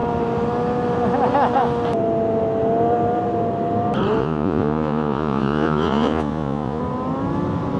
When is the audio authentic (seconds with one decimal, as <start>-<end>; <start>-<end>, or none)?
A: 0.0-4.2; 6.8-7.8